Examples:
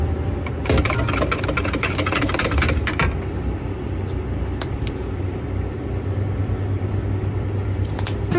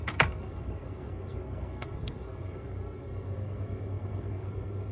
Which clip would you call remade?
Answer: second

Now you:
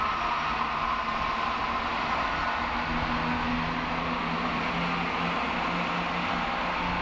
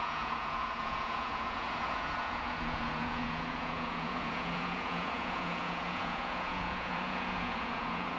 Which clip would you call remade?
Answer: second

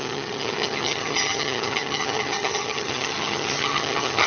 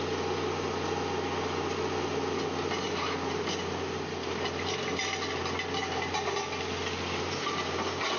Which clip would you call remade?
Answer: first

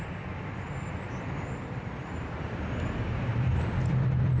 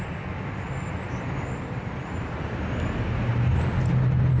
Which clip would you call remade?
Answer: first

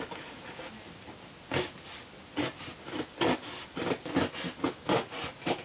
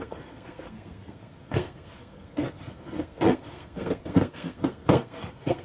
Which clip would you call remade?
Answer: second